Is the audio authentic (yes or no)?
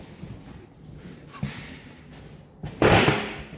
yes